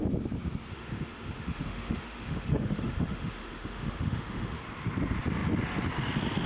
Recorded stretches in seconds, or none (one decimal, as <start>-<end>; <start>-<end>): 0.0-0.7; 4.6-6.5